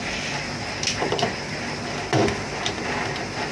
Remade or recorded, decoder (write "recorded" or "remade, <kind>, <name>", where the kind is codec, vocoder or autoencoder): recorded